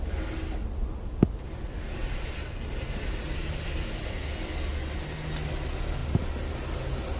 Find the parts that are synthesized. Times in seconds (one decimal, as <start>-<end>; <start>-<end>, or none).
none